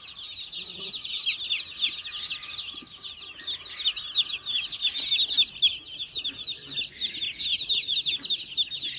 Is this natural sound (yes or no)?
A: yes